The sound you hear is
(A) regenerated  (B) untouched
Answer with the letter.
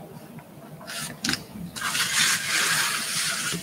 B